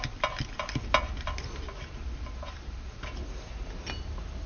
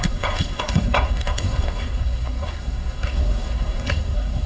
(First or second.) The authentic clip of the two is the first